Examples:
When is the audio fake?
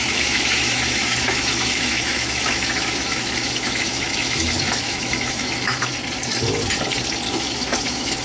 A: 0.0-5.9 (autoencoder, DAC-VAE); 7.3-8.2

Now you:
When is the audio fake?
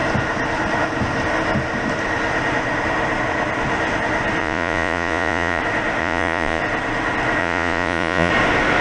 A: 4.4-5.6 (vocoder, Vocos); 6.0-6.6; 7.4-8.3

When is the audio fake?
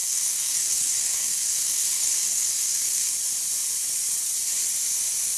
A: 0.0-3.1 (codec, SNAC)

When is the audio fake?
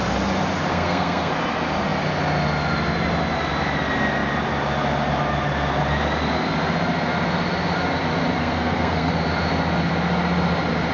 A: 0.7-1.3 (codec, SNAC); 8.4-9.1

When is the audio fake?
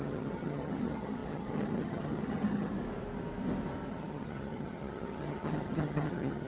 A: 0.0-2.7 (vocoder, HiFi-GAN); 3.9-6.5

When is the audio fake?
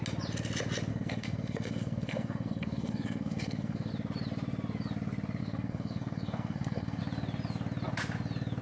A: 0.9-3.9 (codec, SNAC); 5.4-7.0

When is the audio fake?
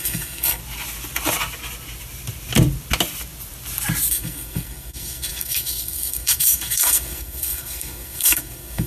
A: 0.0-0.6 (codec, SNAC); 4.1-8.9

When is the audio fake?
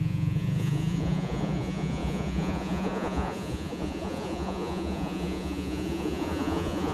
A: 0.0-6.9 (vocoder, Vocos)